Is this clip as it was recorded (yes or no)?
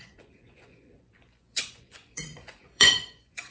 no